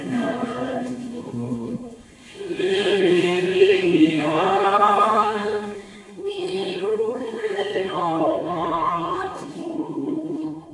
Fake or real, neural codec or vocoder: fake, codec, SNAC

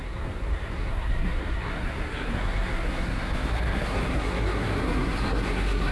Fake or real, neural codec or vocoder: fake, codec, SNAC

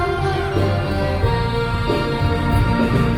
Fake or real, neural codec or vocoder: real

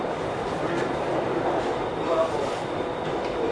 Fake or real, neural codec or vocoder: real